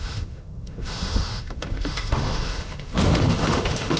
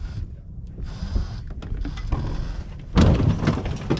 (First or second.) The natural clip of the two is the second